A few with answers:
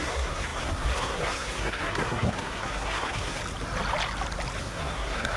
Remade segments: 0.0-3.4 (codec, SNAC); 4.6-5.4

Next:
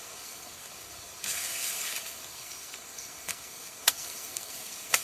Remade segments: 0.0-5.0 (codec, SNAC)

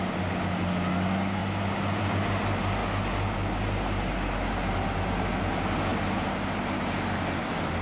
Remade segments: none

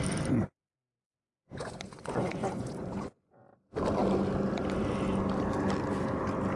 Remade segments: 1.0-3.3 (vocoder, Vocos)

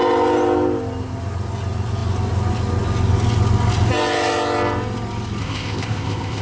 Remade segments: 5.4-6.4 (codec, ZipCodec)

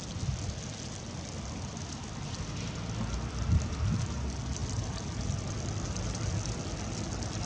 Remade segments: none

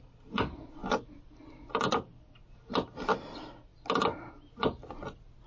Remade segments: none